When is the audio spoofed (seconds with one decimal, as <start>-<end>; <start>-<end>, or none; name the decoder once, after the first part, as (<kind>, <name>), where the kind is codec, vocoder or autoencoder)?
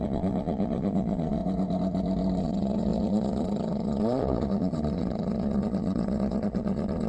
0.0-1.4 (vocoder, Vocos); 2.4-7.1